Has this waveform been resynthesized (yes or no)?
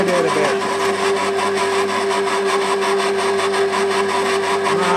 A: no